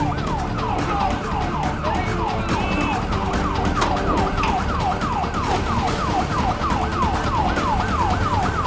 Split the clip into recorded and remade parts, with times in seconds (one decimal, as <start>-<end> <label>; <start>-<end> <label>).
0.0-8.7 recorded